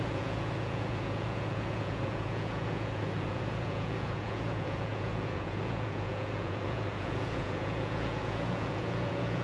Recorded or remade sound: remade